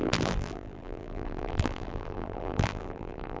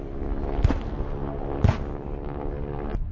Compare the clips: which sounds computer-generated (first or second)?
first